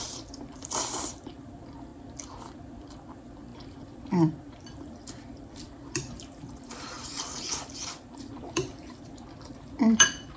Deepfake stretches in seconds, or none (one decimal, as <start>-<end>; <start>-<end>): 0.0-1.9; 2.9-10.4